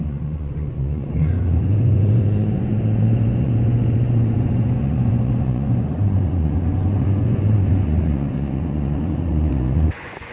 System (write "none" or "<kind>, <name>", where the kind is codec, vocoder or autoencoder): vocoder, Vocos